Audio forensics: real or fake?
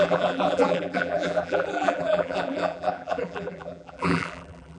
fake